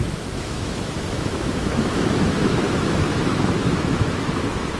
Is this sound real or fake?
fake